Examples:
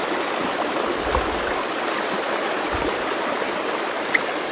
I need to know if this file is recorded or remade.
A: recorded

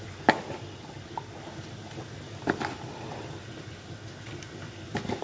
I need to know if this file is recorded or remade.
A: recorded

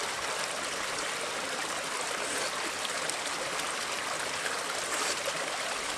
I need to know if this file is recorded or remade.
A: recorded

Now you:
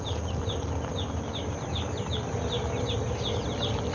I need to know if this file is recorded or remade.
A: recorded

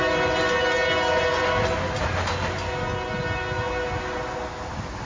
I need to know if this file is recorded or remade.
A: recorded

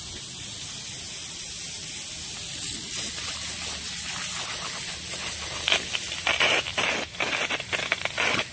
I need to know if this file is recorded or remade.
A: recorded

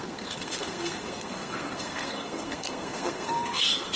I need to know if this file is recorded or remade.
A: remade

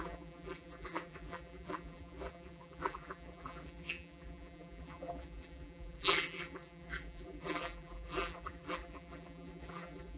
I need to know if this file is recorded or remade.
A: remade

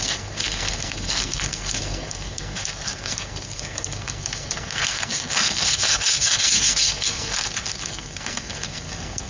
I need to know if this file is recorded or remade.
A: remade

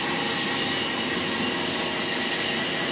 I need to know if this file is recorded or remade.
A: remade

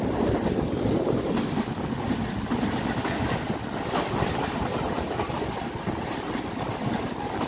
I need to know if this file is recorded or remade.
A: recorded